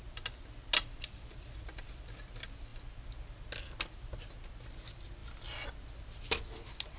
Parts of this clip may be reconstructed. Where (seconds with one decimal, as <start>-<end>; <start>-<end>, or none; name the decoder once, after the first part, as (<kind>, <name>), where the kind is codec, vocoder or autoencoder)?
none